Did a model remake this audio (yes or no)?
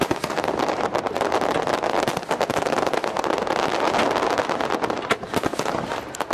no